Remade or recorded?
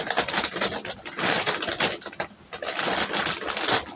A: recorded